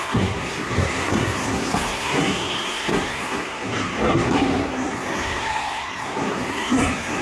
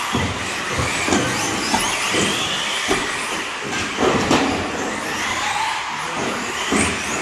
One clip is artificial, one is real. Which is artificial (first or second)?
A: first